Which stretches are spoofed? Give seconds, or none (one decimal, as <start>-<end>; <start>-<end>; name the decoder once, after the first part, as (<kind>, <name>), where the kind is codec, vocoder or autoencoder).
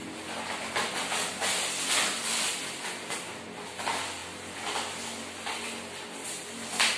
none